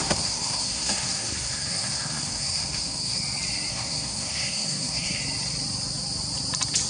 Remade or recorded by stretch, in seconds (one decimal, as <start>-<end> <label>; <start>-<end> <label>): 0.0-3.2 remade; 3.2-3.7 recorded; 3.7-5.2 remade; 5.2-6.9 recorded